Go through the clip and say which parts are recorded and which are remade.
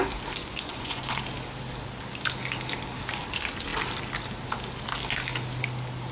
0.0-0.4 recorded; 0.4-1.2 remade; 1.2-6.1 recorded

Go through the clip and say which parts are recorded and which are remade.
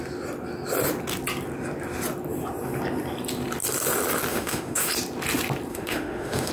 0.0-4.3 recorded; 4.3-4.9 remade; 4.9-5.7 recorded; 5.7-6.5 remade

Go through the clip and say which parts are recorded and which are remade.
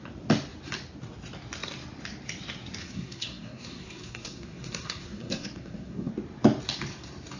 0.0-2.8 recorded; 2.8-6.1 remade; 6.1-7.4 recorded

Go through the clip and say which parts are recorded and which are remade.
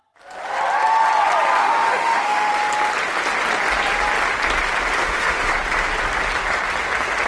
0.0-1.6 recorded; 1.6-2.5 remade; 2.5-5.0 recorded; 5.0-5.5 remade; 5.5-7.3 recorded